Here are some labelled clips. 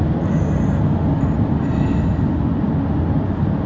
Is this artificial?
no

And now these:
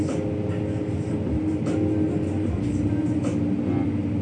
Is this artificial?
no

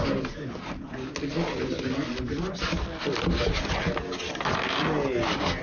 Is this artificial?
no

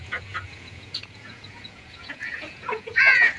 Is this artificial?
yes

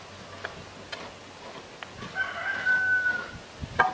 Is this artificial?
no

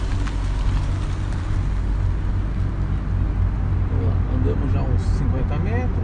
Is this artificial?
no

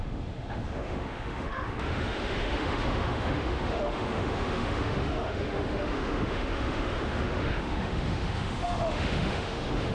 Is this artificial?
yes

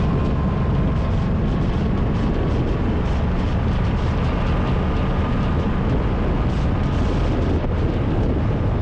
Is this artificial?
no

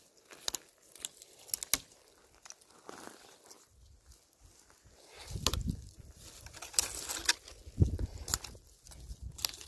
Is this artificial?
no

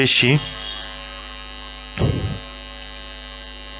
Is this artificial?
no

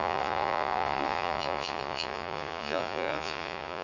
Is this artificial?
yes